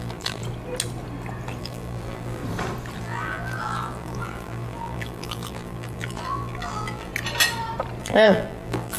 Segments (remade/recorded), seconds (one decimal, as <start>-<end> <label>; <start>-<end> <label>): 0.0-0.4 remade; 0.4-1.6 recorded; 1.6-2.4 remade; 2.4-3.0 recorded; 3.0-7.1 remade; 7.1-8.0 recorded; 8.0-9.0 remade